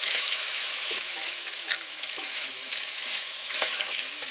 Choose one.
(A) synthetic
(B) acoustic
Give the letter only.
A